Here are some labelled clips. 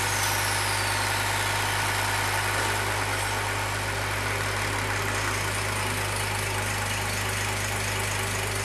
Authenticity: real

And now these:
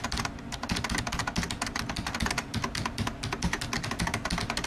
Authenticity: real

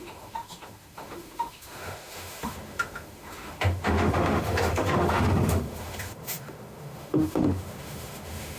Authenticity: fake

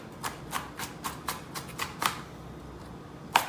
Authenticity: fake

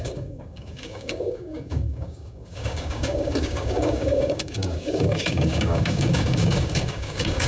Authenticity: fake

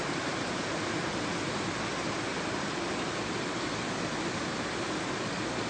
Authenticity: real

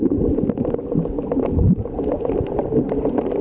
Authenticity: real